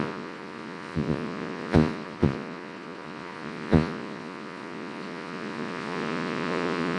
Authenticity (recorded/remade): remade